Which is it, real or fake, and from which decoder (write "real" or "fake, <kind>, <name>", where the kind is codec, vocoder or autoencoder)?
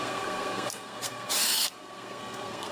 fake, codec, SNAC